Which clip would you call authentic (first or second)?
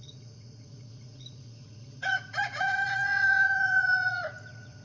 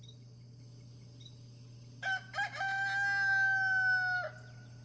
second